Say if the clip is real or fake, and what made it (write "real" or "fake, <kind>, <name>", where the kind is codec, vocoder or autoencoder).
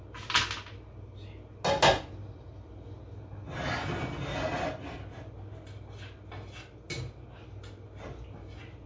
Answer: real